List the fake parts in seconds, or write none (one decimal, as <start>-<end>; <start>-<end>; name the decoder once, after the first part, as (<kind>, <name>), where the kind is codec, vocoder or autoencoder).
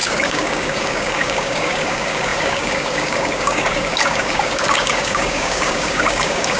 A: 0.0-6.6 (codec, DAC)